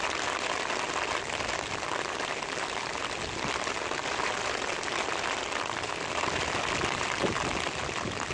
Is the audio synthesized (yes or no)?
no